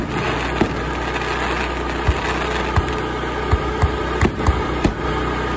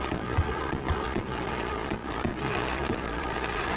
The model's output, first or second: second